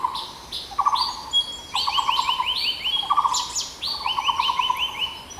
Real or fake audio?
real